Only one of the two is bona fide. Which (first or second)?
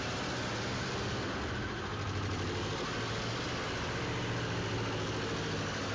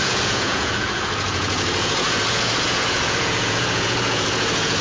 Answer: first